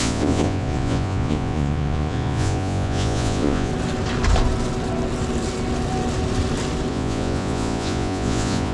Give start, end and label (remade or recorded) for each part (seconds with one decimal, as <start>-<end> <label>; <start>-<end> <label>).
0.0-3.7 remade; 3.7-6.9 recorded; 6.9-8.7 remade